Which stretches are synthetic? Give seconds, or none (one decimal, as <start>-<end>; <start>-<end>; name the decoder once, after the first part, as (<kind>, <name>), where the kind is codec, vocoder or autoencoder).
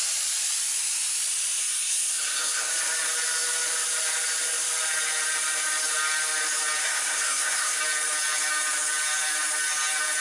1.6-2.7 (codec, SNAC); 6.8-7.8